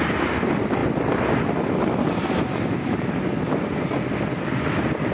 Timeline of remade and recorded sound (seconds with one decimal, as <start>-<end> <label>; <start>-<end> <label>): 0.0-5.1 recorded